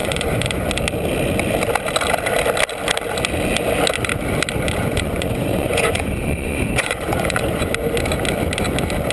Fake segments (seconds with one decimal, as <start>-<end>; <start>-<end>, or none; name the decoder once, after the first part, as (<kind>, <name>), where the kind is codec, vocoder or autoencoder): 0.0-0.7 (vocoder, Vocos); 4.8-7.7